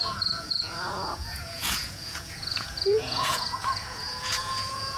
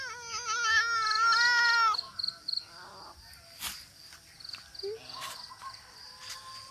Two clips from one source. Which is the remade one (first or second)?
first